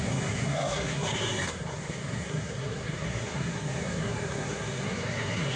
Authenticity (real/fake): fake